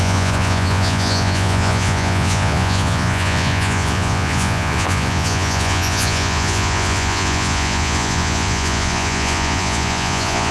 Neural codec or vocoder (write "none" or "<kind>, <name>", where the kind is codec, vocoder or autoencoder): vocoder, Vocos